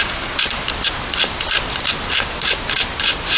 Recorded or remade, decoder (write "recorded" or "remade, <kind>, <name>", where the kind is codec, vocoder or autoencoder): recorded